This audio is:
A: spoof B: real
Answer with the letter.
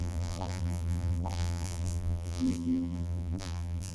A